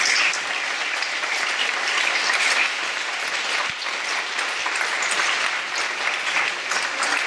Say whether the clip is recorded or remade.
recorded